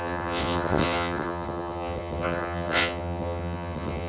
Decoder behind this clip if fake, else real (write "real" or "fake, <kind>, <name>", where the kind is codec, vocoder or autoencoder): fake, vocoder, WaveNeXt